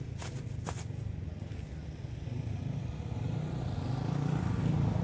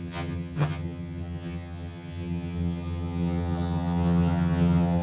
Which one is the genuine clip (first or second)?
first